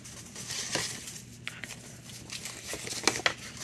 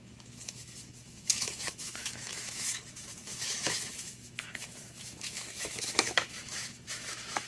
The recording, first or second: first